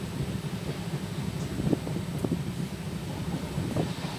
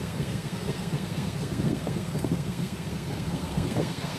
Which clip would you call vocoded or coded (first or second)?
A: second